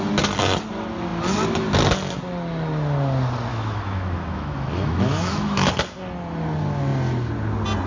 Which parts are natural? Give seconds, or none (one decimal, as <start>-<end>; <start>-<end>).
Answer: 0.0-3.5; 5.7-7.9